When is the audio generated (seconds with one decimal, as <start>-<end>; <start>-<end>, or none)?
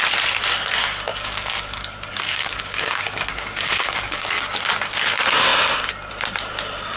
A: 1.1-4.4